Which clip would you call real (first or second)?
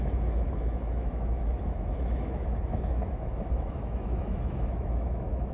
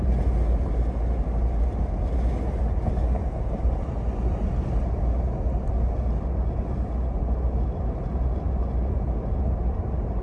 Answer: second